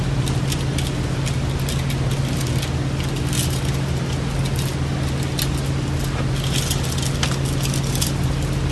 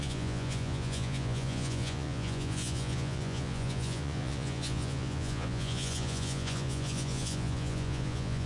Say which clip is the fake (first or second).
second